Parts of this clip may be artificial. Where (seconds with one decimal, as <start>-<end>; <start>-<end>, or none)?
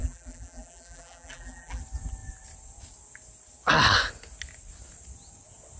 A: 0.0-1.8